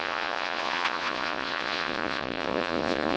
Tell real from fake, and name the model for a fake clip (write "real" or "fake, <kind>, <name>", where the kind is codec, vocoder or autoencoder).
fake, vocoder, Vocos